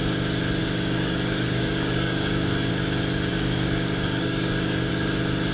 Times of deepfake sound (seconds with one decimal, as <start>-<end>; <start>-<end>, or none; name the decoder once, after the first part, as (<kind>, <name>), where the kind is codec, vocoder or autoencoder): 0.6-2.7 (codec, DAC); 3.3-4.9